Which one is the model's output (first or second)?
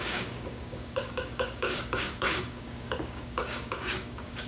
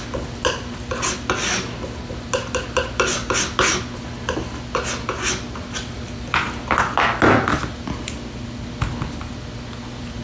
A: first